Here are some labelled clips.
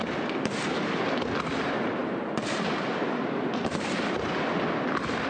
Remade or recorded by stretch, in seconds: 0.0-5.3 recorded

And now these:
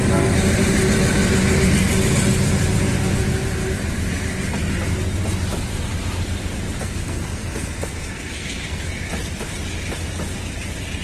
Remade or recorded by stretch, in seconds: 0.0-6.8 recorded; 6.8-9.0 remade; 9.0-11.0 recorded